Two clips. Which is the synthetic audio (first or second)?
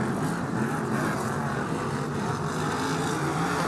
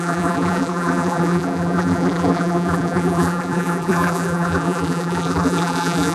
second